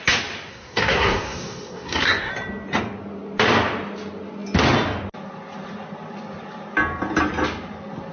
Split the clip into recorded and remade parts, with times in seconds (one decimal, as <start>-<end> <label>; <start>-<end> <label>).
0.0-0.5 recorded; 0.5-2.3 remade; 2.3-8.1 recorded